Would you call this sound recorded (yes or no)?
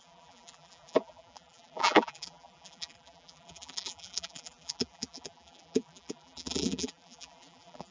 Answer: no